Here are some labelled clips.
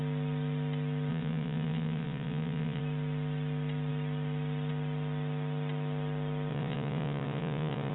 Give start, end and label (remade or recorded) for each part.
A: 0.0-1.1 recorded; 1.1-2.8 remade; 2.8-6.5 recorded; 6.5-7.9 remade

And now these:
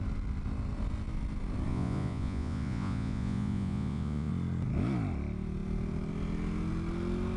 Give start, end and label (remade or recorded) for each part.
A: 0.0-1.7 recorded; 1.7-4.3 remade; 4.3-7.4 recorded

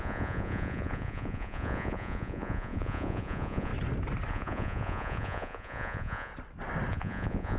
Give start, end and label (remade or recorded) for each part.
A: 0.0-3.7 remade; 3.7-4.3 recorded; 4.3-6.3 remade; 6.3-6.9 recorded; 6.9-7.6 remade

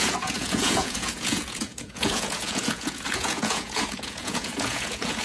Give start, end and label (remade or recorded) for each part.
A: 0.0-5.2 remade

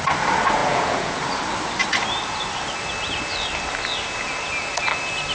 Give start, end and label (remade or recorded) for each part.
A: 0.0-0.6 recorded; 0.6-1.2 remade; 1.2-5.3 recorded

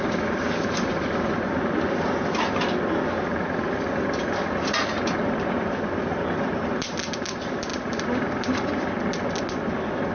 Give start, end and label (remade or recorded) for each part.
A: 0.0-10.1 recorded

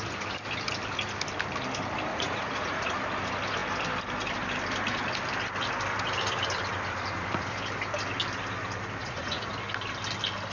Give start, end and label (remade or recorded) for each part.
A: 0.0-2.1 recorded; 2.1-2.9 remade; 2.9-9.0 recorded; 9.0-9.5 remade; 9.5-10.5 recorded

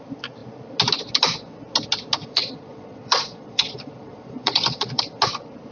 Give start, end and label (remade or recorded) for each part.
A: 0.0-2.2 recorded; 2.2-5.0 remade; 5.0-5.7 recorded